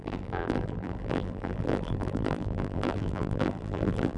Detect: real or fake fake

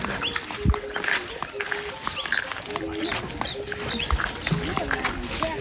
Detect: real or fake real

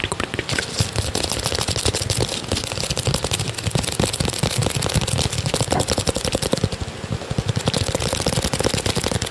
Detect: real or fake real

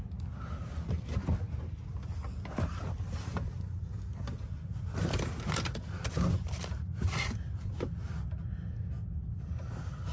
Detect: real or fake real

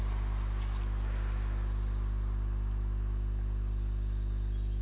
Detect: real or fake real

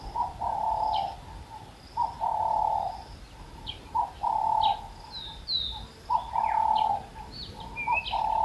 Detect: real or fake real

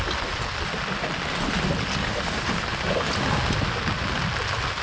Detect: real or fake real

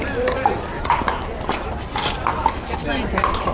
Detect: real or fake fake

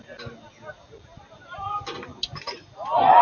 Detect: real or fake fake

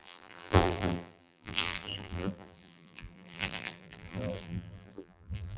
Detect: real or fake fake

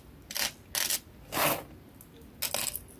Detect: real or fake real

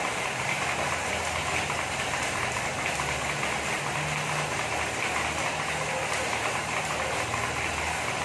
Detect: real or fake fake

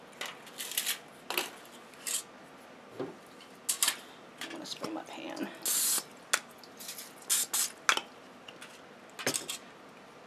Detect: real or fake real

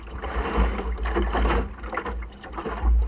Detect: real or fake real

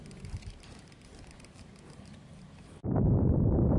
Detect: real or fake fake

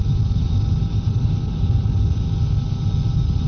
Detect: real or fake real